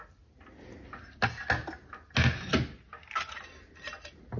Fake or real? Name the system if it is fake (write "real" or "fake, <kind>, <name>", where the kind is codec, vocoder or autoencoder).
real